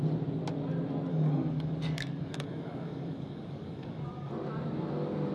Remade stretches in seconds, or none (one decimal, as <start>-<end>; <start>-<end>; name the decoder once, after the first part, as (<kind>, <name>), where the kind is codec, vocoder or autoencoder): 1.1-4.3 (codec, DAC)